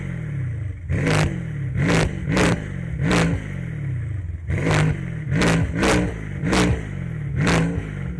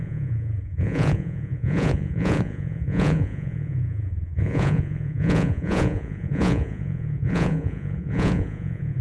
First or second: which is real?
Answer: first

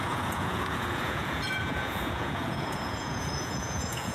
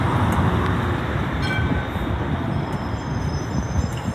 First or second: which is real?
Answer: second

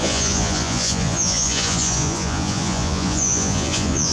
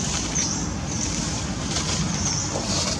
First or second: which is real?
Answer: second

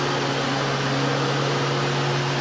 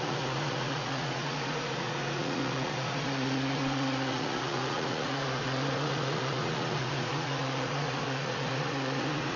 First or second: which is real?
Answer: first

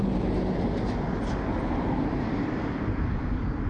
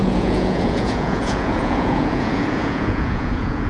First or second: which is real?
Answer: first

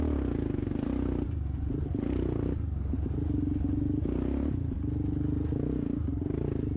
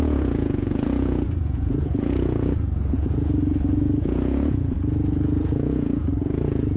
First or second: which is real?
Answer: first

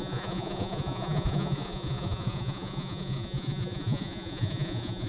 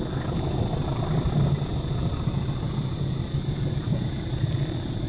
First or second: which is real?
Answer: second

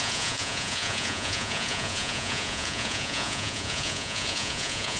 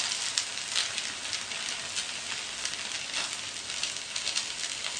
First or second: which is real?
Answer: second